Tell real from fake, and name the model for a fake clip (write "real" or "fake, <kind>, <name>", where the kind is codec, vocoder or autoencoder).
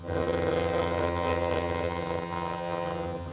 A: fake, vocoder, HiFi-GAN